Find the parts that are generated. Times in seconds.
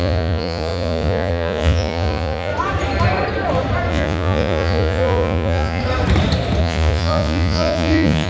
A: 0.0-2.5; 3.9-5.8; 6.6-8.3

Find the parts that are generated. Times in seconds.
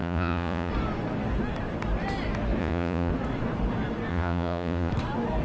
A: 0.0-0.7; 2.6-3.1; 4.1-4.9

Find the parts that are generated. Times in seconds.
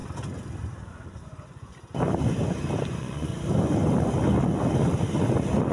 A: 0.9-1.7; 2.9-3.3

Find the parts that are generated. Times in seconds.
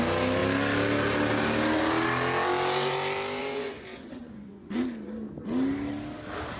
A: 3.4-4.8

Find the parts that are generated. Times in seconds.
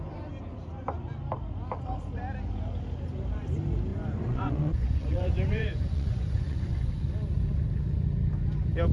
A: 3.9-6.9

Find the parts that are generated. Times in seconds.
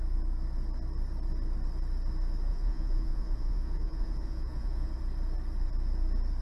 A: 2.5-4.9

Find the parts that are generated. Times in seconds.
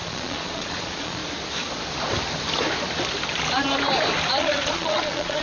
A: 0.0-1.2; 4.3-5.4